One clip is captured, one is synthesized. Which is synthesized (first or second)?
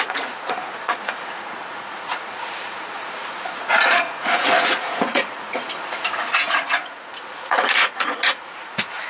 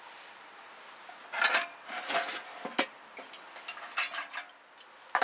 first